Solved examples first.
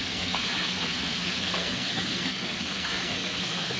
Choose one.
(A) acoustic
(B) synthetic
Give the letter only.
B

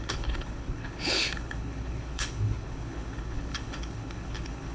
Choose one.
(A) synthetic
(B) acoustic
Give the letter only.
A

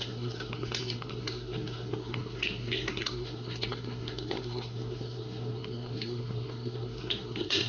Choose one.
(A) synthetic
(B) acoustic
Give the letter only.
A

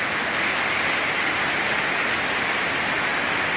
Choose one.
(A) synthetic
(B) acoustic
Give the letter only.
B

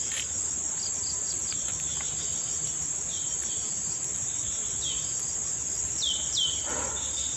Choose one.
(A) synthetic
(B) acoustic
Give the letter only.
B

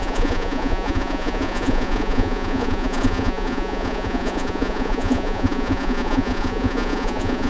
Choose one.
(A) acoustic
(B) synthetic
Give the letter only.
B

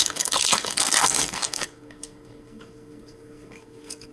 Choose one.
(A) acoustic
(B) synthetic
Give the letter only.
B